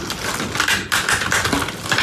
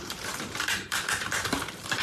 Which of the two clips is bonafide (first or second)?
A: first